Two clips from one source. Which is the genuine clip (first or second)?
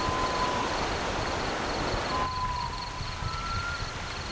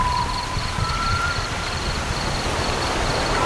first